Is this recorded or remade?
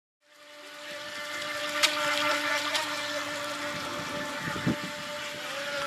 recorded